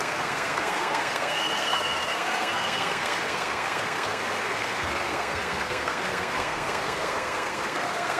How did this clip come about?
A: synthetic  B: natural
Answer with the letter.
A